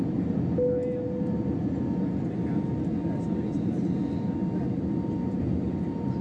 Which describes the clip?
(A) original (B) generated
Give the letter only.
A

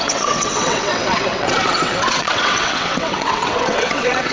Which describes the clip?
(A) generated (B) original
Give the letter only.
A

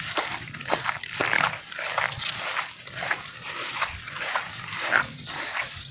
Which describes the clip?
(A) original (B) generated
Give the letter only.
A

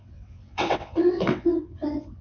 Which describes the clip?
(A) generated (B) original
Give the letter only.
A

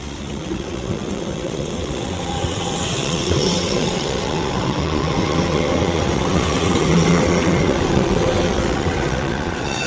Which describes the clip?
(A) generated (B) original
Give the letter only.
A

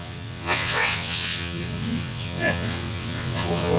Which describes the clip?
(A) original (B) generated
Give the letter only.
B